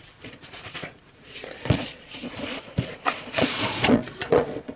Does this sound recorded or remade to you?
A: remade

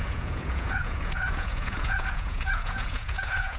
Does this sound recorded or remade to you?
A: remade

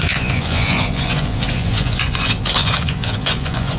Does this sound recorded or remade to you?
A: remade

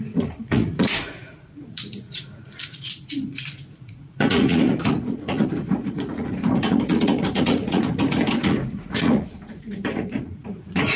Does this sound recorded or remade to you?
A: remade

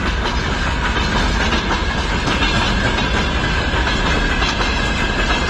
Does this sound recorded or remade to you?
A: recorded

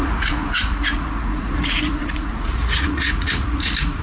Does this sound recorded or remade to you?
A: remade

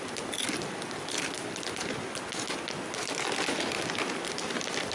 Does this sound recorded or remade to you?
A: recorded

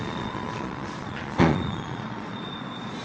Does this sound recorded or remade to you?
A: remade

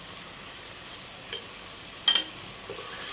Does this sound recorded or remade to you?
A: recorded